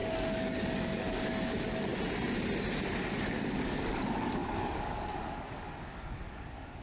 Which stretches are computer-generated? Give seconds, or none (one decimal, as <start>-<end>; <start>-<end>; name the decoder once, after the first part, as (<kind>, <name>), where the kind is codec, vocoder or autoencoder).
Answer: 0.0-1.9 (codec, DAC); 3.2-6.8